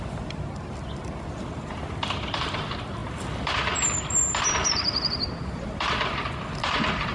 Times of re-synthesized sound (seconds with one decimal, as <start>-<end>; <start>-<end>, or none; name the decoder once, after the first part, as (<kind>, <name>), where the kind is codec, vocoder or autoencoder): 0.0-7.1 (vocoder, BigVGAN v2)